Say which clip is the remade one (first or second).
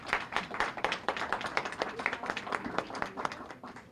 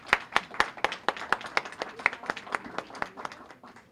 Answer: first